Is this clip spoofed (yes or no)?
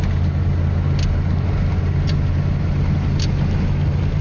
no